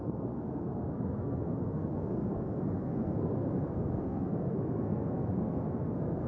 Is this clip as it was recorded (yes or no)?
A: no